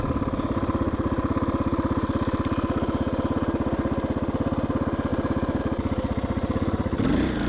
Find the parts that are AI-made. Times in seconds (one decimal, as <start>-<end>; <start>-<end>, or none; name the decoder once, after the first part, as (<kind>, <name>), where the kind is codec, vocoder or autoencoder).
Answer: 5.1-5.6 (vocoder, BigVGAN v2)